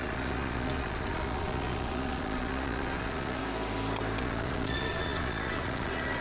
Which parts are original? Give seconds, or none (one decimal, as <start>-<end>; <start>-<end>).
3.4-4.2